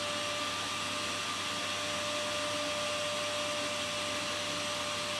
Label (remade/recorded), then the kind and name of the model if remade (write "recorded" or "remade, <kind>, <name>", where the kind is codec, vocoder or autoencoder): recorded